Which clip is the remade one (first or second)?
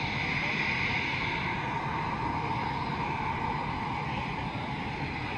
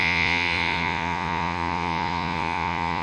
second